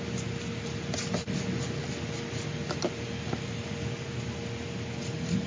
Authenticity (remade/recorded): recorded